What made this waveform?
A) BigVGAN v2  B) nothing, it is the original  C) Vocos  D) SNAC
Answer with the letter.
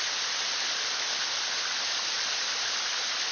A